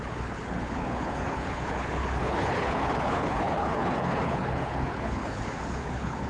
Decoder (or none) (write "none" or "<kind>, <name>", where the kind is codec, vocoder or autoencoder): codec, HILCodec